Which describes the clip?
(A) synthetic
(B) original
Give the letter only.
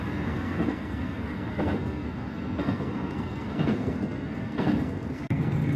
A